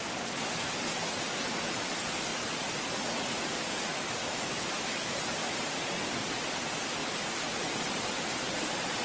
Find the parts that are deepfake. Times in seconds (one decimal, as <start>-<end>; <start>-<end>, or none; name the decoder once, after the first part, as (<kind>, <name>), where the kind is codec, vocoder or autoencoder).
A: 4.2-5.1 (autoencoder, DAC-VAE)

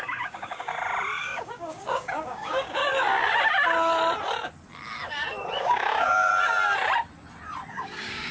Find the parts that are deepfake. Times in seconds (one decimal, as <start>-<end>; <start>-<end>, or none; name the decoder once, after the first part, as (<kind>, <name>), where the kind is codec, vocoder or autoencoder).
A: 0.0-0.7 (codec, DAC); 1.2-2.8; 5.6-6.3; 7.7-8.3

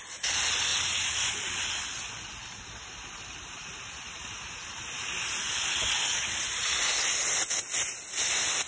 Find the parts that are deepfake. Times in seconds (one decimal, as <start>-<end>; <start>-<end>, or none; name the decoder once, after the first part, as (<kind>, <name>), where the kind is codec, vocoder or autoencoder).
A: 0.7-1.3 (vocoder, BigVGAN v2); 2.4-6.8

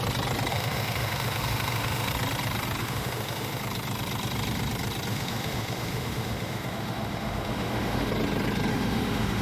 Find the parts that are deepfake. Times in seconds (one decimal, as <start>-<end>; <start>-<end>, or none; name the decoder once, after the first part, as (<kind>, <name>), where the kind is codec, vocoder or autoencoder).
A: 0.5-2.1 (autoencoder, DAC-VAE); 2.8-3.6; 5.1-8.1; 8.7-9.4

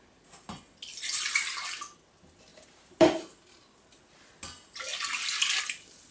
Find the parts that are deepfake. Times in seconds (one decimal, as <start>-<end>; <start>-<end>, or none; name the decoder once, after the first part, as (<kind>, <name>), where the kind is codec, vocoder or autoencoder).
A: 0.9-1.6 (vocoder, BigVGAN v2); 2.5-3.9

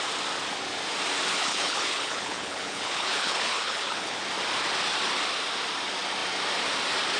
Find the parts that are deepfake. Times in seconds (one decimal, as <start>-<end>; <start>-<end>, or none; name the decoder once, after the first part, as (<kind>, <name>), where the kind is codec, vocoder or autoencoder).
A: 1.4-4.2 (codec, HILCodec)